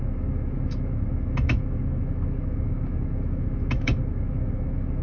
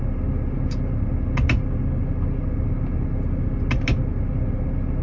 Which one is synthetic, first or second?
first